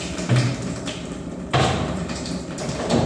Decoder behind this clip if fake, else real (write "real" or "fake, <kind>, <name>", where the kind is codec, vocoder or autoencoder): fake, vocoder, BigVGAN v2